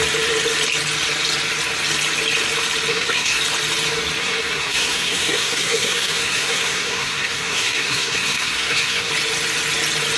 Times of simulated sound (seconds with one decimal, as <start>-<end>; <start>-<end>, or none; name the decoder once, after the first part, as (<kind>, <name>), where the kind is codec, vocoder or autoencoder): 2.9-3.4 (codec, SNAC); 4.2-9.1